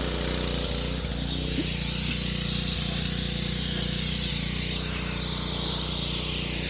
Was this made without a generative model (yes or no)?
yes